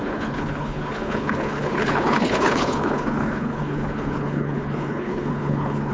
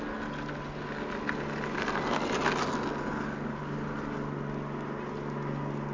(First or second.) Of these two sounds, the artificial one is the first